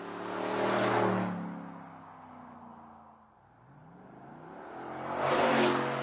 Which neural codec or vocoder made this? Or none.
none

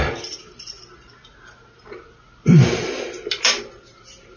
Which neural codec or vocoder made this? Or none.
none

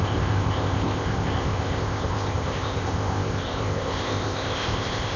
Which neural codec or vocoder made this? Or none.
codec, ZipCodec